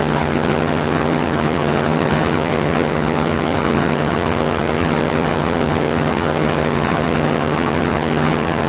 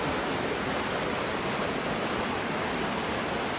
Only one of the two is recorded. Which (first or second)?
second